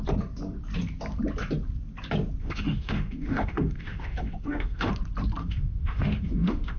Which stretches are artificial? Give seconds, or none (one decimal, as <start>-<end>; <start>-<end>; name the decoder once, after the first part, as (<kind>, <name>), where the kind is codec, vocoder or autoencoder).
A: 2.4-4.9 (autoencoder, DAC-VAE); 5.4-6.8

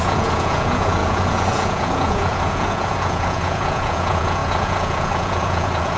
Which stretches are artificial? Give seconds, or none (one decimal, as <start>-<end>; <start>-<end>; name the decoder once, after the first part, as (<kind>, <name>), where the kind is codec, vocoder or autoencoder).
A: 0.0-6.0 (vocoder, Vocos)

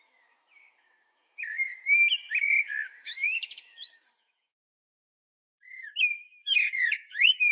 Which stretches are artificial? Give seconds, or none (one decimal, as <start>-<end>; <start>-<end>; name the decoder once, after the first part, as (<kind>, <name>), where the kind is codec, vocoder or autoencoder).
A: 0.0-1.7 (autoencoder, DAC-VAE); 2.4-7.5